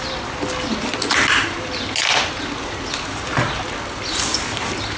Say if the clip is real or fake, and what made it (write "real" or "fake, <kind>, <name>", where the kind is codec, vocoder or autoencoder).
real